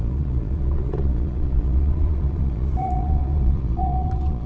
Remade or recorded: remade